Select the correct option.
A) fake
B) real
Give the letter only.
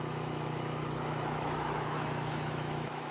A